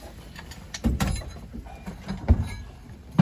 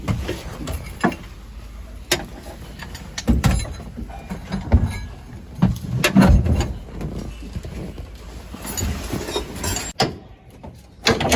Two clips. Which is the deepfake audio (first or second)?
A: first